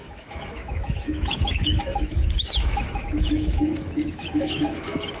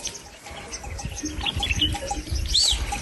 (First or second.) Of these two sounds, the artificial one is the first